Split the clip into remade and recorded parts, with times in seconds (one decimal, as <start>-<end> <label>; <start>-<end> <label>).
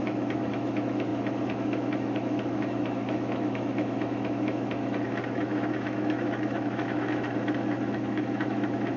0.0-9.0 remade